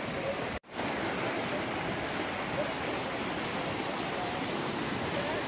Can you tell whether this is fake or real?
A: real